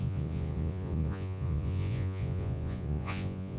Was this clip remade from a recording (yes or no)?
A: yes